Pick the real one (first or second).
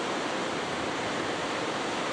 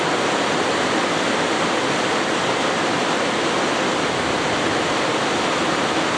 second